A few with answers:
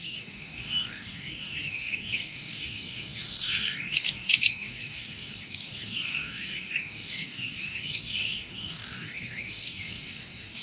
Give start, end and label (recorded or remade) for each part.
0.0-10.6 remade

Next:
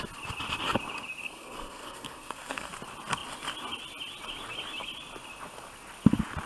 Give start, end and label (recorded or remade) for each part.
0.0-1.2 recorded; 1.2-2.7 remade; 2.7-6.5 recorded